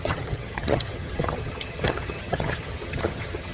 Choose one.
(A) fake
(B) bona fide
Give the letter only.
A